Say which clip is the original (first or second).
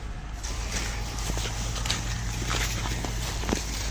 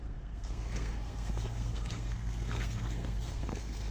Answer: first